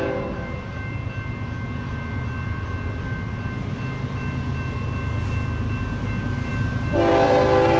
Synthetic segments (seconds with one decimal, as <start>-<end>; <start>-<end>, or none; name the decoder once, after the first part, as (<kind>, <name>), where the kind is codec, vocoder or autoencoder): none

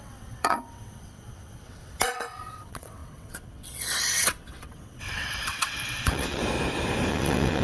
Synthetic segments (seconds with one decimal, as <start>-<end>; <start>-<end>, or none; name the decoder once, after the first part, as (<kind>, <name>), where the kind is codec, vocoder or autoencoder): 0.0-6.4 (vocoder, WaveNeXt); 7.1-7.6

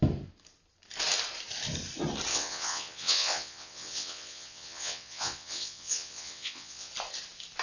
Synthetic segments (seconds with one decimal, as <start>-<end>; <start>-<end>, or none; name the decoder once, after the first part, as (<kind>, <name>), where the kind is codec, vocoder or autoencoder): 2.3-6.9 (vocoder, WaveNeXt)